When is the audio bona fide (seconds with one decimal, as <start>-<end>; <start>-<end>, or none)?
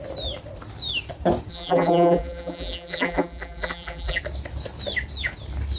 0.0-1.5; 4.2-5.8